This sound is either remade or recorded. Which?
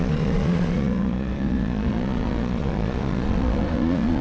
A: remade